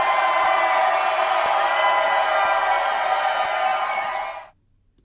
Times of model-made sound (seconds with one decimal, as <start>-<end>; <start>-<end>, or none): none